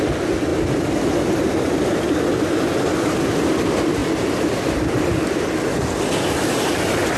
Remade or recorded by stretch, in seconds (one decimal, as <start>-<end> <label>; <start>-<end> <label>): 0.0-7.2 recorded